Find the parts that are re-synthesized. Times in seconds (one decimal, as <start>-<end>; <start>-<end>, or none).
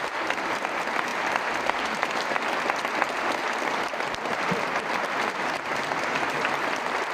none